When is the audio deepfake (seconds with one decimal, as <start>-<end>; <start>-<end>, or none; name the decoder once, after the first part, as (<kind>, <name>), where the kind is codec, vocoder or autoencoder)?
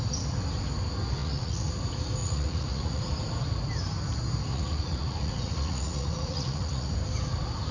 1.2-1.7 (vocoder, Vocos); 2.2-3.0; 4.5-6.9